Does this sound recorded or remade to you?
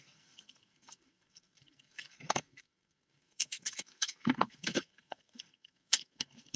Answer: remade